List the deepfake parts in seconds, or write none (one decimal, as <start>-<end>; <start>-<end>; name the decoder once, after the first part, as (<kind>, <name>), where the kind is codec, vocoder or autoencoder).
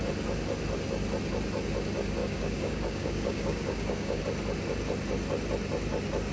2.2-4.2 (codec, DAC)